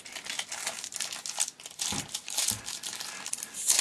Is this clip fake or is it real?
real